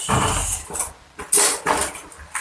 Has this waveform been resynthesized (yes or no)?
no